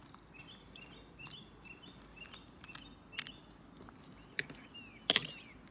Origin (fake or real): real